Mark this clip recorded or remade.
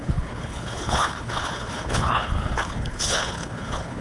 remade